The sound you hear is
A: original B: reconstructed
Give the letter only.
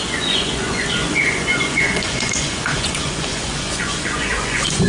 B